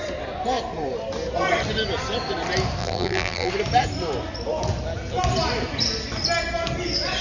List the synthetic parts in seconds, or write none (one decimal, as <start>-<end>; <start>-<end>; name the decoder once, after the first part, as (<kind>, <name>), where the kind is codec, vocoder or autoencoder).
2.8-3.5 (vocoder, BigVGAN v2)